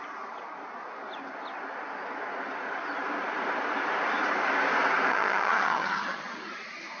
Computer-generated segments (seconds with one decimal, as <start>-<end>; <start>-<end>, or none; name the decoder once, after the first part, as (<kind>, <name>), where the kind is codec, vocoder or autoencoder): 5.1-6.2 (vocoder, HiFi-GAN)